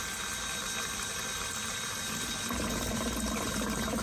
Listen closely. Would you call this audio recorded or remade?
recorded